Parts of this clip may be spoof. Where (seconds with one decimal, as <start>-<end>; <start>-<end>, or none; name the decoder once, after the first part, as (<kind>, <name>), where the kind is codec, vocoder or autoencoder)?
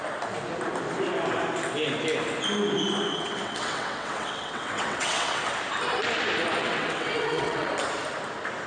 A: 3.1-5.4 (vocoder, WaveNeXt); 6.6-7.7